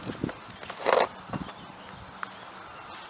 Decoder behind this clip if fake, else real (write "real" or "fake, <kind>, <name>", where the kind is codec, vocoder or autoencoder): real